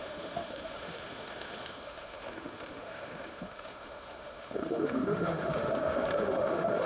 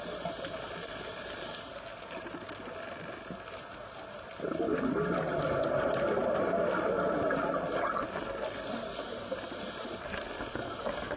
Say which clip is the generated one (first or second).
first